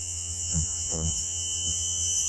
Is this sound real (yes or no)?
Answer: no